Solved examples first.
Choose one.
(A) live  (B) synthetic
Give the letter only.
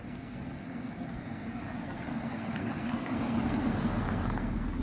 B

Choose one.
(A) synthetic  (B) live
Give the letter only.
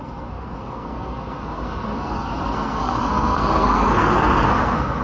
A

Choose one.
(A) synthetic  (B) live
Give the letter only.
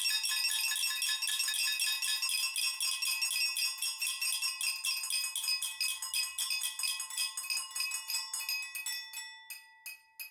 B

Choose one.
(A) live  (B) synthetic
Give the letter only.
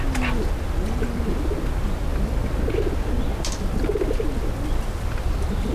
A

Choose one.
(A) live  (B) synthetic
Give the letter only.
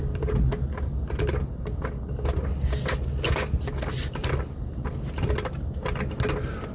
A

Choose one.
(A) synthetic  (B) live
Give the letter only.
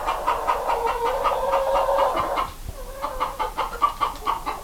B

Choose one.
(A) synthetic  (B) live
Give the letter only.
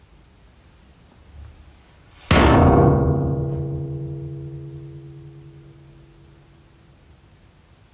B